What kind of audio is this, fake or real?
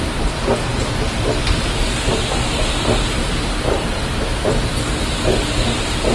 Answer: real